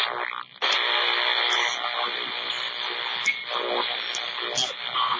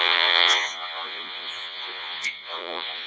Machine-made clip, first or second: second